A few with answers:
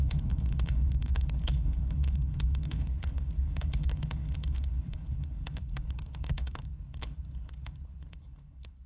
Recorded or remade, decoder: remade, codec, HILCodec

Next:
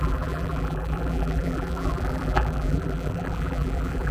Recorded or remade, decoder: remade, vocoder, BigVGAN v2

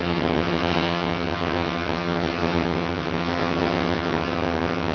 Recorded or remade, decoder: remade, vocoder, HiFi-GAN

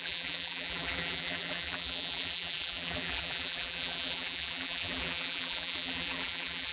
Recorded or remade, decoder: remade, vocoder, BigVGAN v2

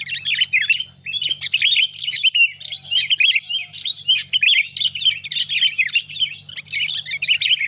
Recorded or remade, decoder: recorded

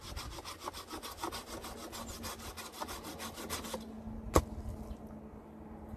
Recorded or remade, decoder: recorded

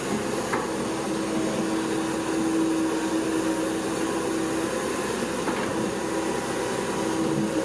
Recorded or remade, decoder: recorded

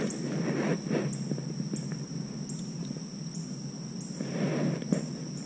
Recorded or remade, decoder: recorded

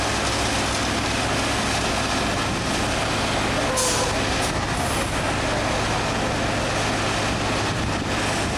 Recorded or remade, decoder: recorded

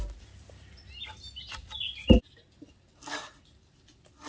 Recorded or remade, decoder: recorded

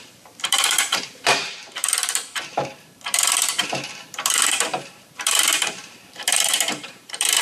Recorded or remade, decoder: remade, vocoder, BigVGAN v2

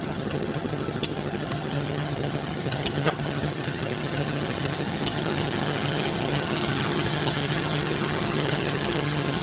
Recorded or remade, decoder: remade, vocoder, HiFi-GAN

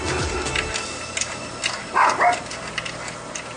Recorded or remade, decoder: recorded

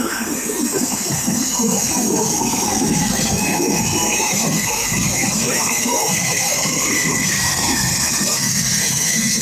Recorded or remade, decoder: remade, codec, SNAC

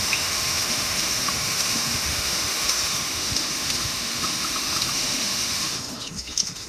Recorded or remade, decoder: remade, autoencoder, DAC-VAE